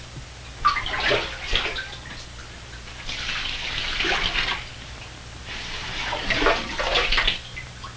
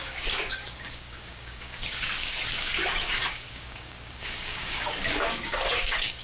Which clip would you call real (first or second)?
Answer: first